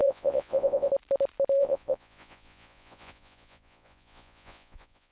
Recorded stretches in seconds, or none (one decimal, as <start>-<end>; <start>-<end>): 0.9-1.6